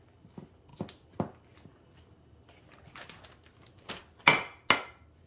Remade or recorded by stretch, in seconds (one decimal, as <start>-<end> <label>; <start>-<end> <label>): 0.0-5.3 recorded